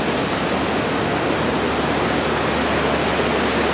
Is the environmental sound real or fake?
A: real